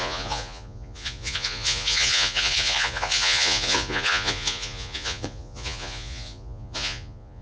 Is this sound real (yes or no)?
no